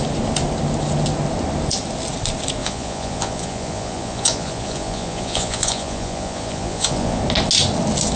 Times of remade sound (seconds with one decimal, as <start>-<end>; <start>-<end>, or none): 2.6-7.2